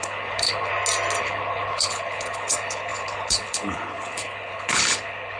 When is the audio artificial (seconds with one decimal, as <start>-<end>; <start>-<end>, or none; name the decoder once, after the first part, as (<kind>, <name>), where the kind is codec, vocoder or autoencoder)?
0.0-0.7 (codec, HILCodec); 1.2-5.4